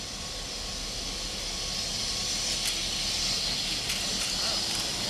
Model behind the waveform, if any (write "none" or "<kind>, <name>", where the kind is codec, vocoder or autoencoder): none